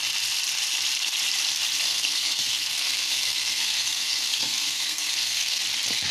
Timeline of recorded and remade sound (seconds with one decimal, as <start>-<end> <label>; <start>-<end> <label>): 0.0-1.9 recorded; 1.9-5.6 remade; 5.6-6.1 recorded